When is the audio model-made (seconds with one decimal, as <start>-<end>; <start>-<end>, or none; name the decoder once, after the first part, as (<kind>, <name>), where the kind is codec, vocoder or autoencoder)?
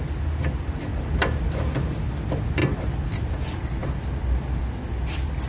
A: 0.9-1.6 (vocoder, BigVGAN v2); 2.6-3.4